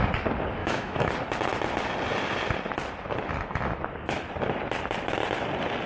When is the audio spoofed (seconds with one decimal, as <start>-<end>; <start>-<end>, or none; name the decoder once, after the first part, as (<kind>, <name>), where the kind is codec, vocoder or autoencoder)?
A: 0.6-1.1 (autoencoder, DAC-VAE)